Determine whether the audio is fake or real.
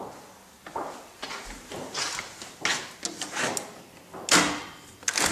real